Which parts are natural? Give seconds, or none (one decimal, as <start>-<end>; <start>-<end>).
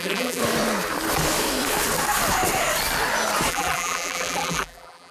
0.4-3.5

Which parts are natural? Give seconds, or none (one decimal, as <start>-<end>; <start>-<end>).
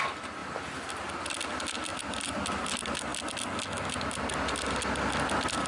0.0-1.9; 2.5-5.7